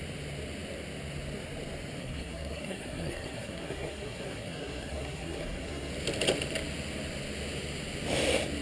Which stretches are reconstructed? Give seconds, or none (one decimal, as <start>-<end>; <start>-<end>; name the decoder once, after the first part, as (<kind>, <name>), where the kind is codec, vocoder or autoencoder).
2.0-5.9 (codec, SNAC)